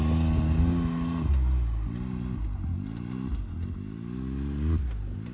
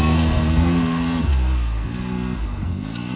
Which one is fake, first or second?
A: second